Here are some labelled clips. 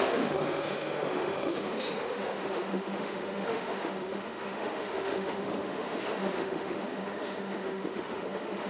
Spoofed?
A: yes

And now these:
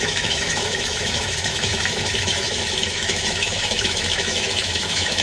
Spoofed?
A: yes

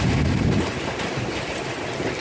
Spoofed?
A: no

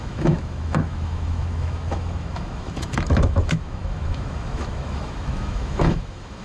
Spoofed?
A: yes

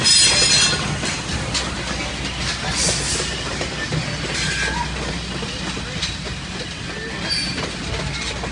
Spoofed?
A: no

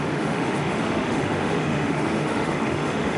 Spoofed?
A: yes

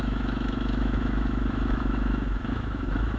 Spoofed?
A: yes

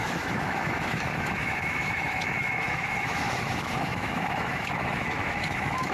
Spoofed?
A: yes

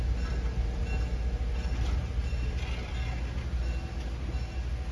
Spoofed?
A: no